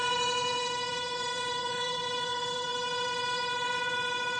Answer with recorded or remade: remade